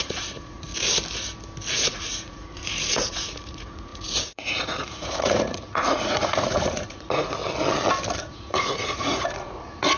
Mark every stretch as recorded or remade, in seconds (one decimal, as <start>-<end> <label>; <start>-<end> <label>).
0.0-0.7 remade; 0.7-1.7 recorded; 1.7-7.4 remade; 7.4-8.2 recorded; 8.2-10.0 remade